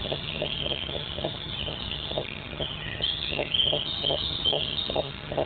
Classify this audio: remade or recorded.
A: remade